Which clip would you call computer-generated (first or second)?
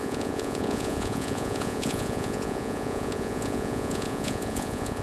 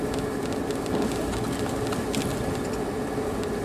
first